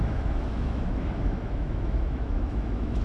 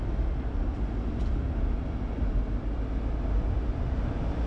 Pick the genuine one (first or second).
second